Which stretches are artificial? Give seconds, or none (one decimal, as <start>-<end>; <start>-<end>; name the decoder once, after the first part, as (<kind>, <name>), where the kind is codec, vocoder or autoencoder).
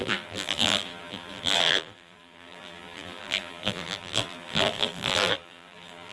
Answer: 0.0-6.1 (vocoder, BigVGAN v2)